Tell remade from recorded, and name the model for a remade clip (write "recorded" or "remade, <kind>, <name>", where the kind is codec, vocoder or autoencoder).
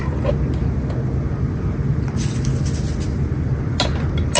recorded